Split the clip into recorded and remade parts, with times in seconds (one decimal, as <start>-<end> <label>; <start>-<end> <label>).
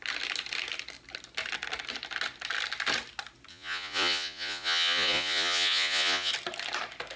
0.0-3.5 recorded; 3.5-6.3 remade; 6.3-7.2 recorded